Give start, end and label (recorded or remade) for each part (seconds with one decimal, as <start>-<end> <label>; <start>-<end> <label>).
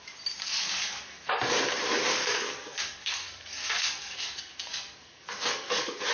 0.0-0.4 recorded; 0.4-1.3 remade; 1.3-2.1 recorded; 2.1-6.1 remade